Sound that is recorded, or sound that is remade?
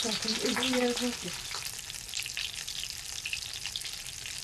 recorded